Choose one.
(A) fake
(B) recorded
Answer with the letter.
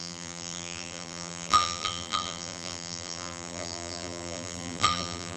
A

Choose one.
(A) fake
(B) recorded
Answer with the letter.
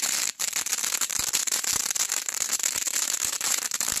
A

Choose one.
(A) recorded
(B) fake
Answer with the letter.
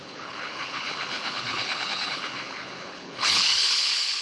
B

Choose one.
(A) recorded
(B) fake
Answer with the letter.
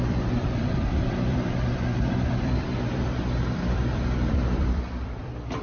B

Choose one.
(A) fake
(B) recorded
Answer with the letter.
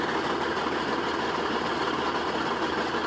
B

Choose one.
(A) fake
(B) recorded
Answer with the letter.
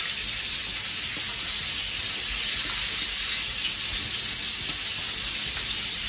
B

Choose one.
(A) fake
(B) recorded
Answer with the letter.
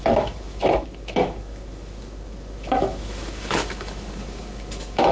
A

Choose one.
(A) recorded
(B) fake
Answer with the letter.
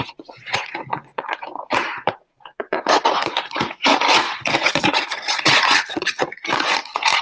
B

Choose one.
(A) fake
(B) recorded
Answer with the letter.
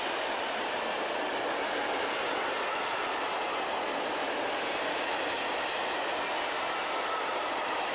B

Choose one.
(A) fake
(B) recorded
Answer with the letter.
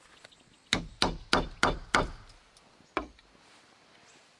B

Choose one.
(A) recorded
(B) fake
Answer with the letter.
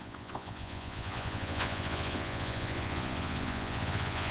B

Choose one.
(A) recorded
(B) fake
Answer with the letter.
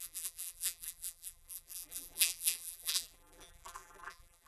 B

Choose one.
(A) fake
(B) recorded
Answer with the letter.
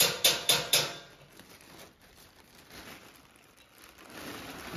B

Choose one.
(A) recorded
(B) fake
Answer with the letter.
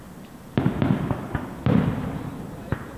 B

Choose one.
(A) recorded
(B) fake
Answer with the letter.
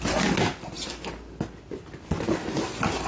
A